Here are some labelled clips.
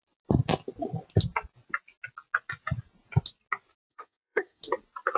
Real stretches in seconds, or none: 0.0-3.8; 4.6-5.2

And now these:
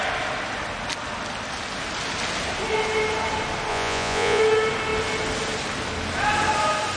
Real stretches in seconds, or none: 0.0-3.7; 4.4-7.0

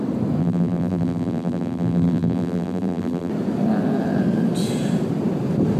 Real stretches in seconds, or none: 0.0-0.4; 3.3-5.8

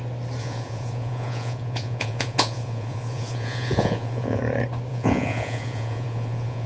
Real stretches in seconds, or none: 0.0-0.4; 4.4-4.9

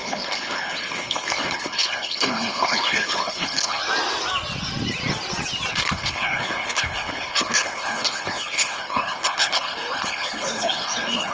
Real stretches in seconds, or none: 3.8-5.7

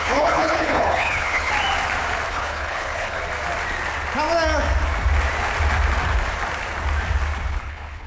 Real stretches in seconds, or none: 1.5-2.3; 3.2-7.5

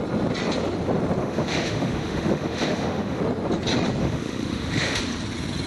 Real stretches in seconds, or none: 0.0-1.2; 3.2-4.0; 5.0-5.7

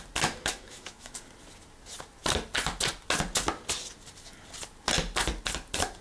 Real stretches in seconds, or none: 0.0-0.5; 1.1-6.0